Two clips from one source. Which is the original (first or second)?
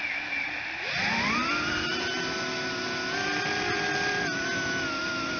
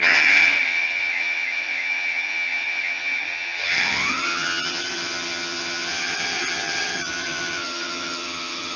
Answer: first